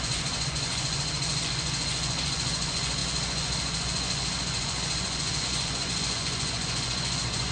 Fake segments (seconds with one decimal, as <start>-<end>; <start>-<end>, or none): 0.0-7.5